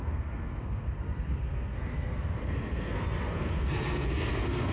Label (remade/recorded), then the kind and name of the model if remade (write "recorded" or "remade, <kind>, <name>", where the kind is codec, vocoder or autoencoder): remade, codec, SNAC